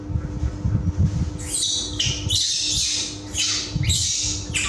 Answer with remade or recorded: recorded